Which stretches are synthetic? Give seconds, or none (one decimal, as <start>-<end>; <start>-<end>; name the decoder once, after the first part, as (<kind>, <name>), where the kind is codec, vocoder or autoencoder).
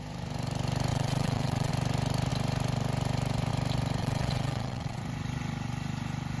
0.9-1.7 (vocoder, WaveNeXt); 4.0-5.0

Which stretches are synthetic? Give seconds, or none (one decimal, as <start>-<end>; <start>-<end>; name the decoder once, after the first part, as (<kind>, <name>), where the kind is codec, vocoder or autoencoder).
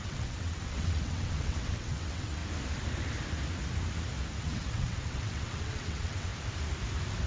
0.0-2.4 (vocoder, WaveNeXt); 4.4-6.3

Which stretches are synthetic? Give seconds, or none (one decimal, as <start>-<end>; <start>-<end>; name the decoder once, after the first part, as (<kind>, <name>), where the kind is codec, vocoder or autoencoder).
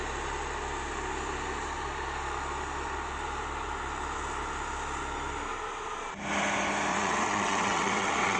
6.9-8.4 (vocoder, WaveNeXt)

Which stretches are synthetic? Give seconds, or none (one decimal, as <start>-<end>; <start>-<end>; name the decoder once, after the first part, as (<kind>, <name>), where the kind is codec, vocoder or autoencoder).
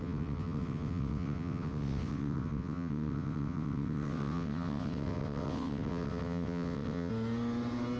0.0-7.1 (vocoder, WaveNeXt)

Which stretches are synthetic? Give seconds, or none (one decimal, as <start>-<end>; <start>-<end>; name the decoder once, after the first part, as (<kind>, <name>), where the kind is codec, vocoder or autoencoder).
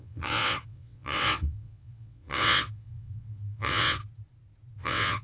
0.0-4.0 (vocoder, WaveNeXt); 4.8-5.2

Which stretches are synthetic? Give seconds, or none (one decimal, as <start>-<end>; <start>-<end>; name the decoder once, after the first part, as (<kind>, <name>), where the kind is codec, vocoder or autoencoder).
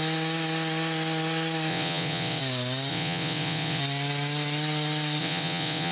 1.7-2.4 (vocoder, WaveNeXt); 2.9-3.8; 5.2-5.9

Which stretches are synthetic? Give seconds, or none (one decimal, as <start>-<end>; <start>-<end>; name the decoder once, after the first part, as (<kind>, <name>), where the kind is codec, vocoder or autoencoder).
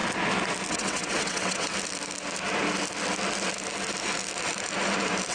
0.7-1.7 (vocoder, WaveNeXt)